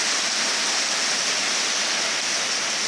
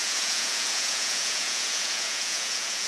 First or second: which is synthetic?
second